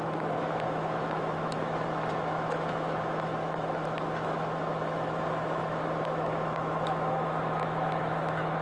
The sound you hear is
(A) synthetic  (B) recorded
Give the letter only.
A